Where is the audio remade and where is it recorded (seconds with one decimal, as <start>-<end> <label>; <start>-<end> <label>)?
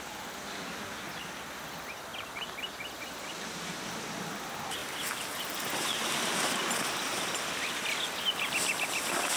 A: 0.0-2.1 remade; 2.1-3.5 recorded; 3.5-4.8 remade; 4.8-6.4 recorded; 6.4-9.4 remade